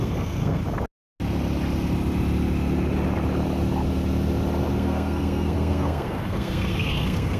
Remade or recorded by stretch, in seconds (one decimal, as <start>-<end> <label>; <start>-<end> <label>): 0.0-0.6 remade; 0.6-4.7 recorded; 4.7-7.4 remade